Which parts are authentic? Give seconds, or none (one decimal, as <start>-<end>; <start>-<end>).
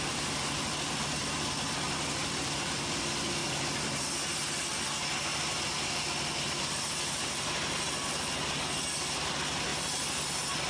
0.0-10.7